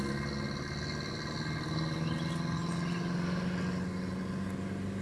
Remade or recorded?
recorded